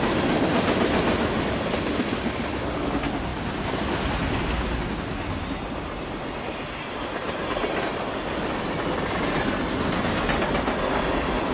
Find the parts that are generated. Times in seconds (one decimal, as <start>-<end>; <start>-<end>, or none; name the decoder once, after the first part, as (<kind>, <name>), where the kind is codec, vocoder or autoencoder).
none